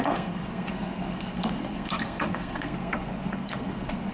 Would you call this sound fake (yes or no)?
yes